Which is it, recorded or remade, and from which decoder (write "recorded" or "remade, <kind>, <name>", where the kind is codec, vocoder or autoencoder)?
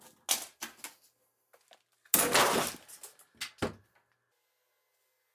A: recorded